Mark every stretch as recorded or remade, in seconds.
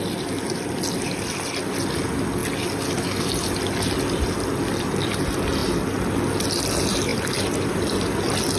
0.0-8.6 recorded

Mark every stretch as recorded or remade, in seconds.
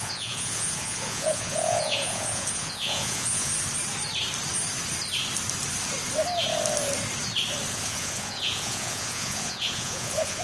0.0-3.5 remade; 3.5-7.7 recorded; 7.7-10.4 remade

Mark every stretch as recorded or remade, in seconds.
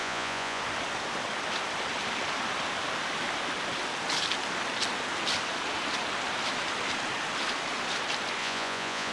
0.0-0.6 remade; 0.6-8.4 recorded; 8.4-9.1 remade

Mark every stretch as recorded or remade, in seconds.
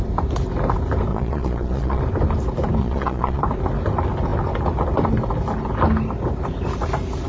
0.0-1.1 recorded; 1.1-2.0 remade; 2.0-2.8 recorded; 2.8-3.4 remade; 3.4-7.3 recorded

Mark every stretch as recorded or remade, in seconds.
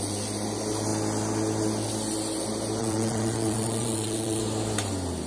0.0-2.8 recorded; 2.8-4.4 remade; 4.4-5.3 recorded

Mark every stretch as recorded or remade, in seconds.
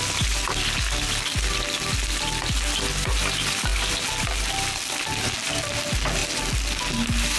0.0-7.4 recorded